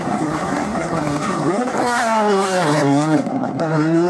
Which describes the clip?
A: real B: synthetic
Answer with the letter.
B